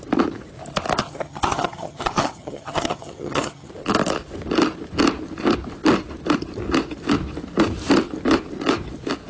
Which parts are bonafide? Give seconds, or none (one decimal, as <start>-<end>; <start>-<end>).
0.0-1.0; 3.7-9.3